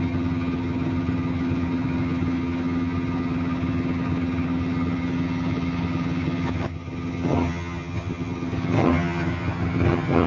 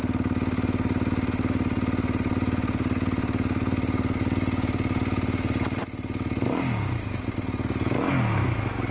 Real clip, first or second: second